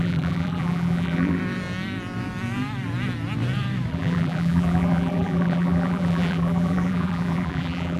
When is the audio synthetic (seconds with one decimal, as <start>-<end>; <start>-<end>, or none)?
0.0-1.4; 3.9-8.0